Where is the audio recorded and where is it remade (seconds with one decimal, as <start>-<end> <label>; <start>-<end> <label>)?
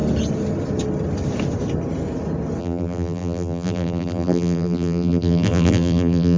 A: 0.0-2.6 recorded; 2.6-6.4 remade